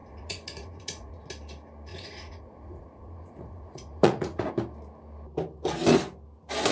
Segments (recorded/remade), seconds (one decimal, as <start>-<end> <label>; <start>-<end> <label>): 0.0-1.3 remade; 1.3-1.9 recorded; 1.9-4.5 remade; 4.5-6.7 recorded